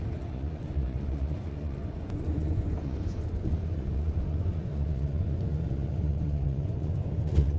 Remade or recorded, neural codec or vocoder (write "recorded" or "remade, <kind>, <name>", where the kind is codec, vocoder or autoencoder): remade, vocoder, Vocos